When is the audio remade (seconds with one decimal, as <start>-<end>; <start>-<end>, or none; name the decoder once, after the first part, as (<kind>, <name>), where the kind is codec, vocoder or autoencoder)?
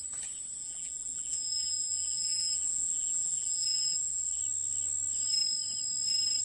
0.6-4.4 (vocoder, BigVGAN v2)